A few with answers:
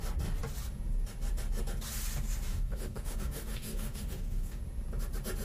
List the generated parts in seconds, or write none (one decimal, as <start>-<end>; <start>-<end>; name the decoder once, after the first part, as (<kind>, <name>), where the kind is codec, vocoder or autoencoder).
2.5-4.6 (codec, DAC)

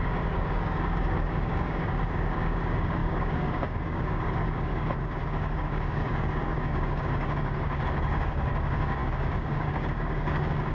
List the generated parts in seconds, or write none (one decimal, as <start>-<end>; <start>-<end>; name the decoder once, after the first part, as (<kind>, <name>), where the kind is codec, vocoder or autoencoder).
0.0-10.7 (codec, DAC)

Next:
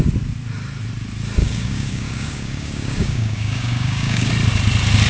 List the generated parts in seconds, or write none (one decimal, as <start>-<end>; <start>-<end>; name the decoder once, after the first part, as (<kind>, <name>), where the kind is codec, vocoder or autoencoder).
1.4-4.3 (codec, DAC)

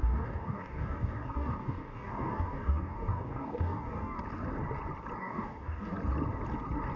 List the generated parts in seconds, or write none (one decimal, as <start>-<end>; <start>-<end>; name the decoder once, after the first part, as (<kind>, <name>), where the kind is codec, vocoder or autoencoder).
0.0-4.2 (codec, DAC); 5.2-5.9

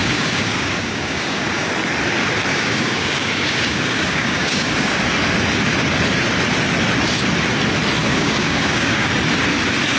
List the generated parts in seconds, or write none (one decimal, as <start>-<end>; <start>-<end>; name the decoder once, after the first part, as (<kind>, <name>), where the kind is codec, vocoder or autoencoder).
0.0-1.7 (codec, DAC); 2.5-5.0; 8.0-9.1

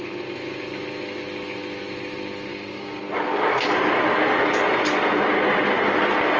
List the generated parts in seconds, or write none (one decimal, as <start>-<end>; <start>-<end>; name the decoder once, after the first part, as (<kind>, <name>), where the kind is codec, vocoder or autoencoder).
2.5-3.0 (codec, DAC)